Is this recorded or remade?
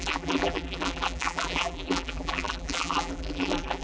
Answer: remade